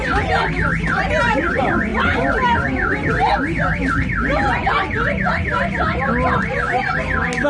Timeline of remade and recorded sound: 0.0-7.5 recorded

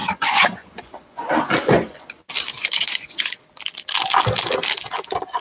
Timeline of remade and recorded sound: 0.0-2.1 remade; 2.1-2.6 recorded; 2.6-3.3 remade; 3.3-5.4 recorded

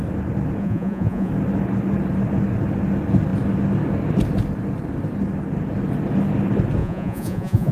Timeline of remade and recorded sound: 0.0-0.6 recorded; 0.6-1.3 remade; 1.3-6.8 recorded; 6.8-7.7 remade

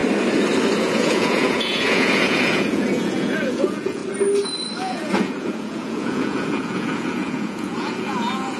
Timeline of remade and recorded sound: 0.0-0.8 recorded; 0.8-4.0 remade; 4.0-4.8 recorded; 4.8-8.6 remade

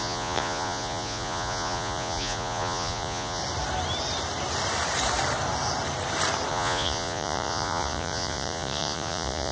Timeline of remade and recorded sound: 0.0-3.4 remade; 3.4-6.5 recorded; 6.5-9.5 remade

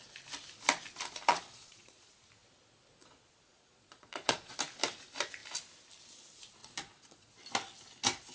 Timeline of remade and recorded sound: 0.0-1.3 recorded; 1.3-2.1 remade; 2.1-3.0 recorded; 3.0-4.5 remade; 4.5-6.6 recorded; 6.6-7.3 remade; 7.3-8.3 recorded

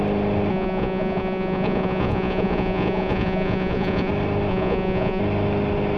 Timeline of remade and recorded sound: 0.0-0.5 recorded; 0.5-4.1 remade; 4.1-4.5 recorded; 4.5-5.2 remade; 5.2-6.0 recorded